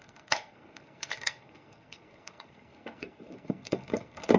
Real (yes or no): no